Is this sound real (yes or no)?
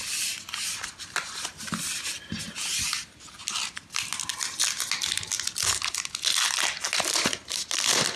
yes